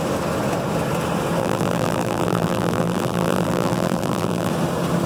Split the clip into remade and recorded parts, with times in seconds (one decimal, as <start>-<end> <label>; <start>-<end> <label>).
0.0-1.4 recorded; 1.4-4.5 remade; 4.5-5.1 recorded